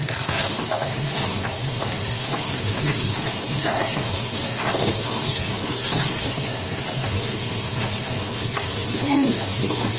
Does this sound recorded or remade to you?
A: remade